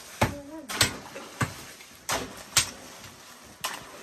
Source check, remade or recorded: recorded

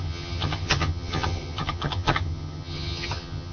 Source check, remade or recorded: remade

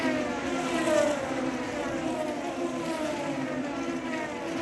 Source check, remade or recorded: recorded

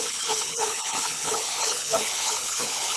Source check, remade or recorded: remade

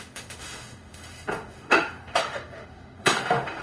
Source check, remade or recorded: remade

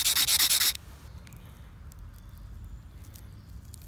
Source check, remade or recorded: recorded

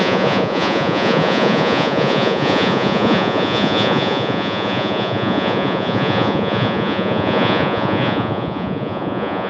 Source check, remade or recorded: remade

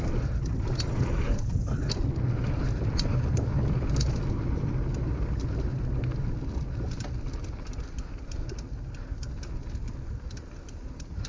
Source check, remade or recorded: recorded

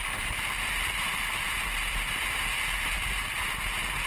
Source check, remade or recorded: remade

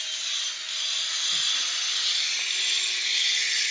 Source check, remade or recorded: recorded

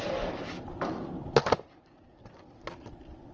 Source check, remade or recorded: recorded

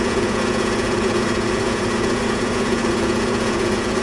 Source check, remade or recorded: remade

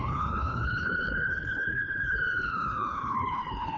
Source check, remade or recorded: remade